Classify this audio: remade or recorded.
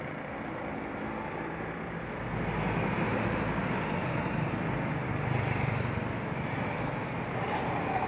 recorded